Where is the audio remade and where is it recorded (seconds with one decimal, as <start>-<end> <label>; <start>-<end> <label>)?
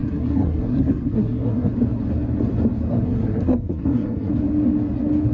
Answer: 0.0-1.7 remade; 1.7-2.9 recorded; 2.9-4.3 remade; 4.3-5.3 recorded